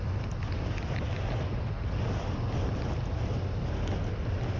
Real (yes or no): yes